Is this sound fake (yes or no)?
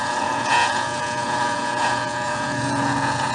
yes